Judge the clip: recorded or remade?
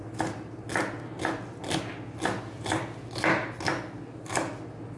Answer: recorded